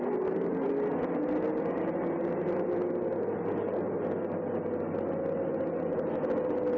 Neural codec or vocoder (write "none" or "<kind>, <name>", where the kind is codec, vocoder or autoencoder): none